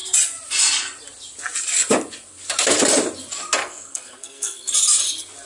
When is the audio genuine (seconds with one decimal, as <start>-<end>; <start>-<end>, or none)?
0.0-3.6; 4.7-5.5